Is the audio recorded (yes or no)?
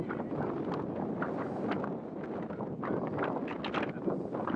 yes